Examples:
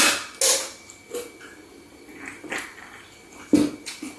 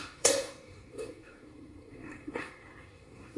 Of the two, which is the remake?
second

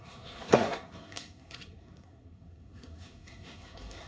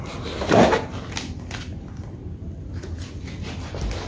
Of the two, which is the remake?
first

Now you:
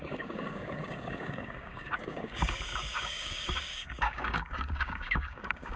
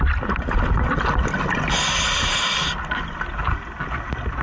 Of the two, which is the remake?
first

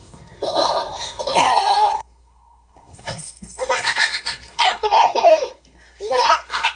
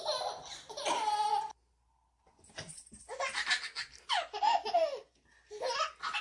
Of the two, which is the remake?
first